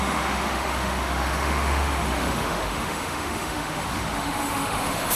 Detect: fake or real fake